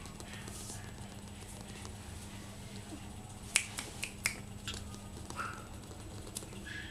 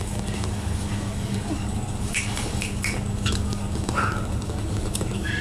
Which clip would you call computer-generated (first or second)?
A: second